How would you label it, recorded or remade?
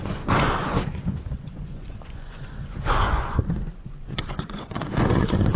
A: remade